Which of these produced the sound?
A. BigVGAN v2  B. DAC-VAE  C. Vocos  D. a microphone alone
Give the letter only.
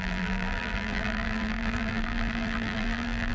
A